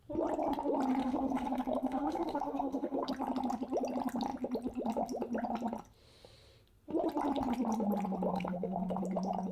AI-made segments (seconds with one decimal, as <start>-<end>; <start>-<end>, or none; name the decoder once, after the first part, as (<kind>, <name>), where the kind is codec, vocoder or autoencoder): 1.0-3.1 (codec, SNAC); 8.3-9.0